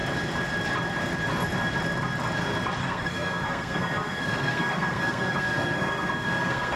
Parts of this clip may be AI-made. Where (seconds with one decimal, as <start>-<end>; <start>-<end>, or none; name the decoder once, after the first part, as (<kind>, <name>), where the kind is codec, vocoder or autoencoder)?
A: 2.8-6.8 (codec, SNAC)